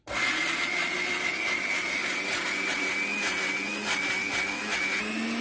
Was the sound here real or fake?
real